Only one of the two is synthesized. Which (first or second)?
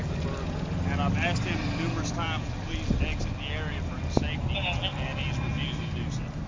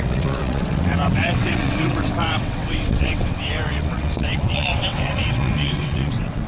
second